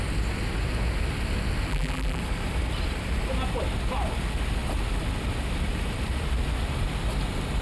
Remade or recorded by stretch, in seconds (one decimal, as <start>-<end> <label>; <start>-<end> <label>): 0.0-1.7 recorded; 1.7-2.2 remade; 2.2-7.6 recorded